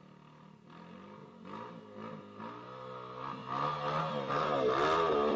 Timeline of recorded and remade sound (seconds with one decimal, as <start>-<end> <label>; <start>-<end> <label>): 0.0-5.4 recorded